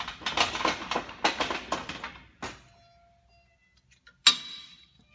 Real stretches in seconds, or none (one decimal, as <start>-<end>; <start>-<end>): 0.0-5.1